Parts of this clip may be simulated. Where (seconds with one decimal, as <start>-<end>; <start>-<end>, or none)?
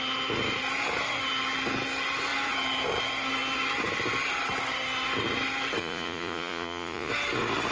5.8-7.1